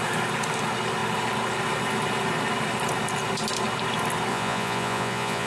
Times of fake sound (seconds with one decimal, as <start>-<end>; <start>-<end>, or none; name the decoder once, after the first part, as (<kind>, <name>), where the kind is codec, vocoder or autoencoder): 4.3-5.5 (vocoder, Vocos)